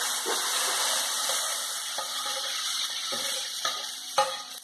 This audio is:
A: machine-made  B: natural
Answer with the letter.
A